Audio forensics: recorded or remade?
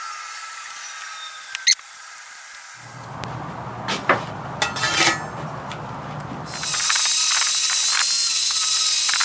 recorded